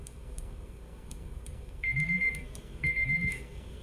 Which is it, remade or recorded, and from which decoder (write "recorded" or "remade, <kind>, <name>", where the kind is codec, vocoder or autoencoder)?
remade, codec, SNAC